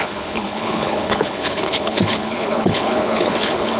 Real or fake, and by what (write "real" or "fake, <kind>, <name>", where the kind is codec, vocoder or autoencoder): fake, codec, HILCodec